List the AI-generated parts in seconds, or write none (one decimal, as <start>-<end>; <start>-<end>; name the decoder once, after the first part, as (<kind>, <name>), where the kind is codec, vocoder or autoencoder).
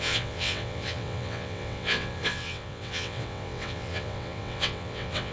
0.0-5.3 (vocoder, WaveNeXt)